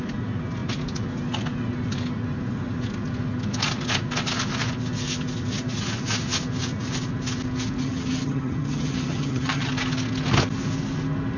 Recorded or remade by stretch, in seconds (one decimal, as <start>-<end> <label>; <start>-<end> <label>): 0.0-7.8 recorded; 7.8-9.7 remade; 9.7-11.4 recorded